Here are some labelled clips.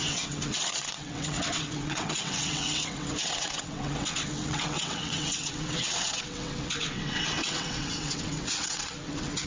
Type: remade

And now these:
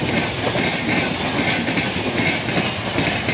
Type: recorded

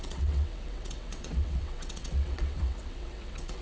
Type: remade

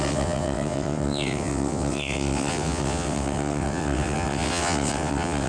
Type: remade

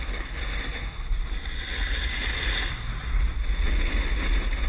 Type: recorded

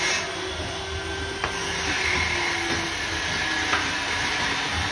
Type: recorded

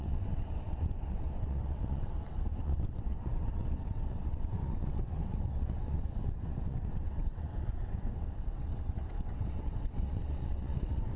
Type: remade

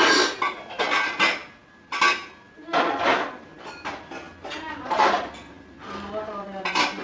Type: recorded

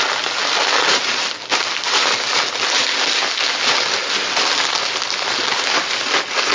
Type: recorded